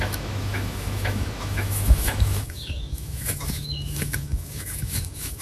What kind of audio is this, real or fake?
fake